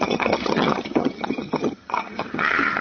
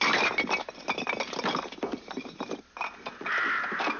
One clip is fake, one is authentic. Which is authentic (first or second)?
second